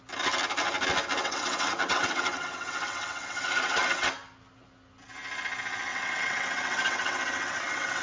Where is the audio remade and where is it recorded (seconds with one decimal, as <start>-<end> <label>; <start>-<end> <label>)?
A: 0.0-1.2 recorded; 1.2-4.1 remade; 4.1-5.9 recorded; 5.9-8.0 remade